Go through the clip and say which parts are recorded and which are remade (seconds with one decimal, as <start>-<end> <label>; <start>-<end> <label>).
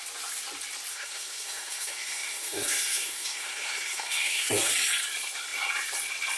0.0-0.9 recorded; 0.9-4.7 remade; 4.7-6.4 recorded